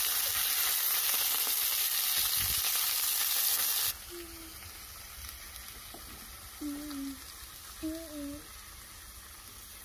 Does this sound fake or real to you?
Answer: real